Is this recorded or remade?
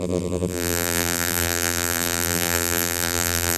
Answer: remade